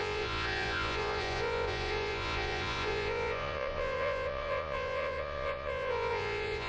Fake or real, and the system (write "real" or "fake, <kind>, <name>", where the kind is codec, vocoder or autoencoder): fake, vocoder, Vocos